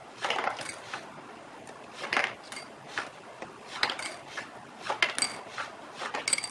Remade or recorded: recorded